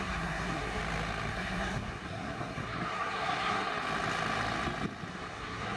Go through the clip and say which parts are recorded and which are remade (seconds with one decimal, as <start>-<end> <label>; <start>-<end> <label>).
0.0-0.8 remade; 0.8-1.3 recorded; 1.3-3.7 remade; 3.7-5.1 recorded; 5.1-5.8 remade